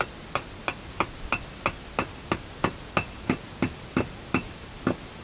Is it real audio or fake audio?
real